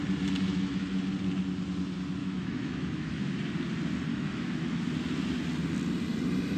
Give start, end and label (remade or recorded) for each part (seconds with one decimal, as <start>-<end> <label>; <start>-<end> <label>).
0.0-0.5 recorded; 0.5-1.0 remade; 1.0-2.2 recorded; 2.2-3.4 remade; 3.4-4.1 recorded; 4.1-4.8 remade; 4.8-6.6 recorded